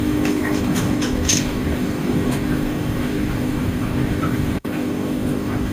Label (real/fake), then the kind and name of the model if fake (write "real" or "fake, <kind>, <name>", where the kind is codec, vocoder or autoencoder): fake, codec, DAC